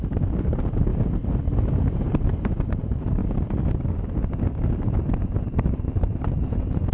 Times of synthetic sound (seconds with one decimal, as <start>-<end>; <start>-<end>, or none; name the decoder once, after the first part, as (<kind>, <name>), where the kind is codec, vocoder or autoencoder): 0.0-0.9 (vocoder, BigVGAN v2); 1.8-3.2; 4.7-6.9

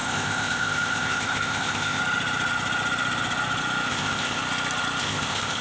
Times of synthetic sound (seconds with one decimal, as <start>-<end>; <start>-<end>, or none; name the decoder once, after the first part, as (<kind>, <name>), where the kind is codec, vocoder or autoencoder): 0.0-2.0 (codec, ZipCodec); 3.9-4.4; 5.0-5.6